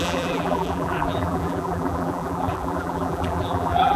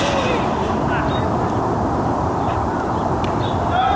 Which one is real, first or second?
second